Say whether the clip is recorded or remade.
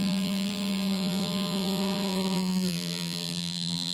remade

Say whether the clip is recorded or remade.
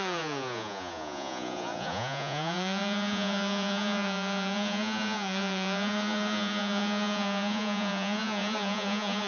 remade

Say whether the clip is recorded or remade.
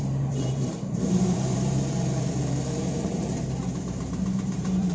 remade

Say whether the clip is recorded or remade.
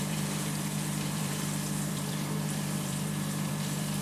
remade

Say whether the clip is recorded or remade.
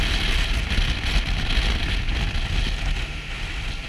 recorded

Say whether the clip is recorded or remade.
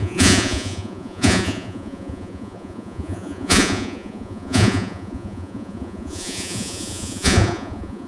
remade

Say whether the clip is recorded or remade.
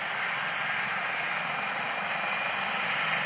remade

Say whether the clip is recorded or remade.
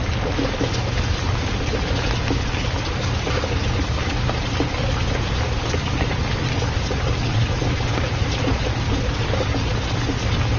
recorded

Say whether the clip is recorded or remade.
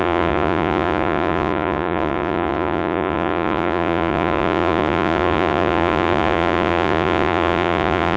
remade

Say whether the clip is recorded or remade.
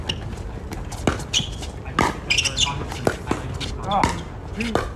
recorded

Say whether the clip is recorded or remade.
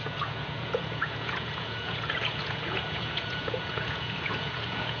remade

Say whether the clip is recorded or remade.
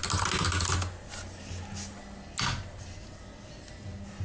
recorded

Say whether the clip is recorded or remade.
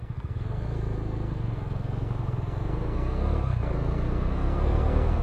remade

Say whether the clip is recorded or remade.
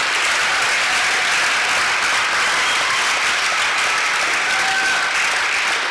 recorded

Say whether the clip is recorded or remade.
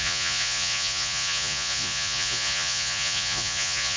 remade